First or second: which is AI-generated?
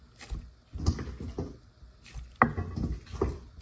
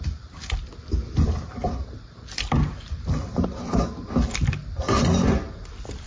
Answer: second